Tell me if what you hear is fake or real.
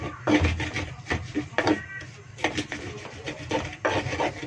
real